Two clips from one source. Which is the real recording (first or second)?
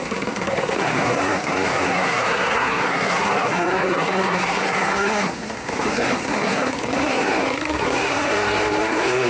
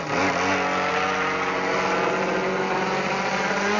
second